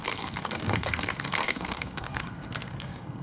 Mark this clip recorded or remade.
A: remade